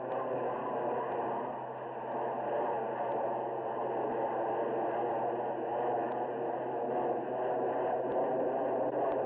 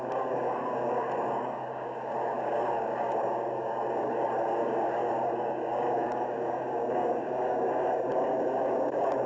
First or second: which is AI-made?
second